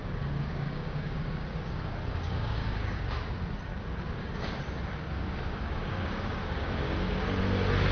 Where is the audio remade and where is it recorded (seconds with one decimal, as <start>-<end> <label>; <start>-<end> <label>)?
0.0-3.0 remade; 3.0-3.7 recorded; 3.7-7.2 remade; 7.2-7.9 recorded